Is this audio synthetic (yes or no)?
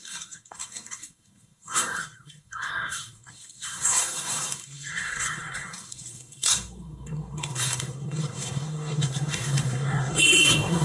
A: yes